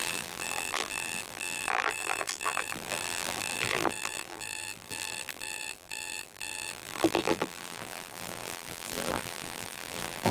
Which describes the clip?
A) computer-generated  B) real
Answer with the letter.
A